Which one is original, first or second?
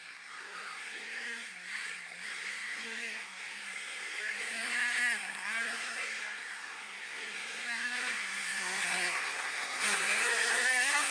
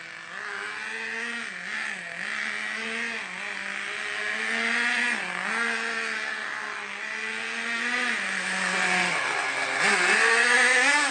second